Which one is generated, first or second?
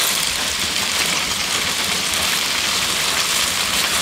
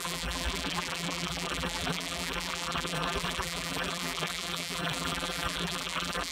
second